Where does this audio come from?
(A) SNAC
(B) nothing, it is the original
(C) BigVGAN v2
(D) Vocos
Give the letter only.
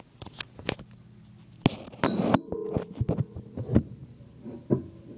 B